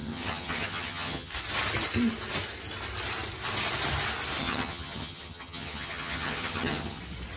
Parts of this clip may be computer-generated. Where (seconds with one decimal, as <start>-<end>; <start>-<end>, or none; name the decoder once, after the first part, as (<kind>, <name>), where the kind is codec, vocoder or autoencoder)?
0.0-1.3 (vocoder, HiFi-GAN); 4.4-7.0